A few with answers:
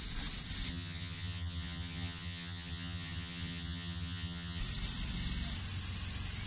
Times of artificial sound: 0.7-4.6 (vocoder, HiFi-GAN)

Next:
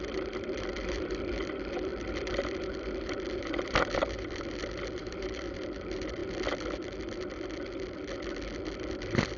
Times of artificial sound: 0.0-6.2 (vocoder, BigVGAN v2); 8.9-9.4

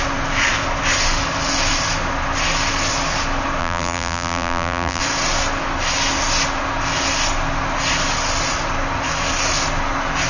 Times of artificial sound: 3.6-5.0 (vocoder, BigVGAN v2)

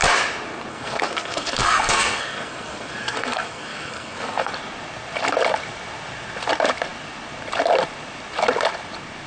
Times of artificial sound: 0.7-4.5 (codec, SNAC)

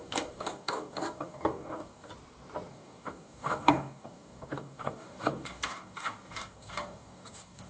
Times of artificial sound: 0.0-2.1 (codec, DAC); 2.7-7.7

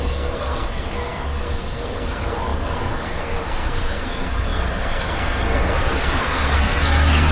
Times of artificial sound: 0.0-7.3 (codec, SNAC)

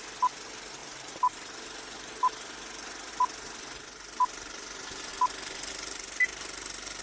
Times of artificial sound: 0.8-3.1 (vocoder, BigVGAN v2)

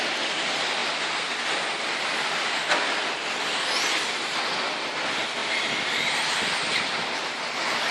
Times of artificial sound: none